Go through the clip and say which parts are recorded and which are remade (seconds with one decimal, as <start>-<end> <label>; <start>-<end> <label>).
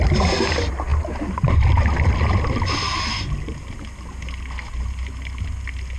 0.0-6.0 recorded